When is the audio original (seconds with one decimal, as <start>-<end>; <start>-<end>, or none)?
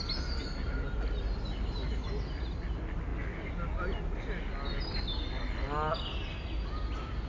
0.0-7.3